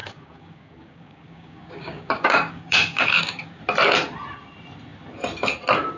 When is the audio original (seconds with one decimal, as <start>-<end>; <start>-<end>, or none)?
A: 3.6-6.0